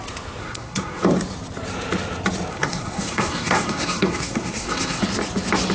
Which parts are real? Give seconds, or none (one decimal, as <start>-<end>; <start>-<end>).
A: 0.0-0.4; 1.0-2.5; 5.0-5.7